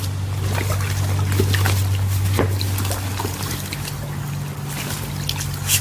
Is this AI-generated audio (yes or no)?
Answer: no